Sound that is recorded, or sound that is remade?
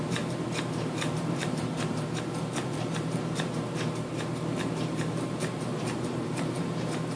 remade